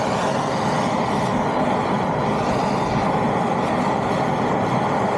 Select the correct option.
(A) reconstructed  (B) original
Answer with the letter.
B